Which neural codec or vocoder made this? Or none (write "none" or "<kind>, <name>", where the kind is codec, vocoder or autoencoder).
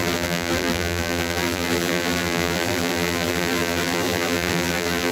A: vocoder, BigVGAN v2